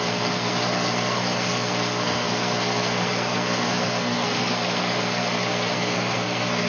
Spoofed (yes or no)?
yes